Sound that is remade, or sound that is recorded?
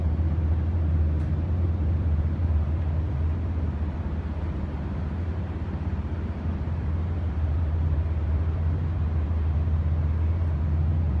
remade